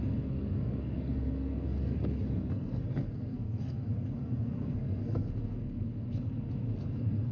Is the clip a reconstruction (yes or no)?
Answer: yes